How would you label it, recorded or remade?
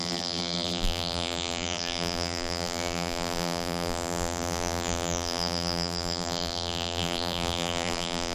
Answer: remade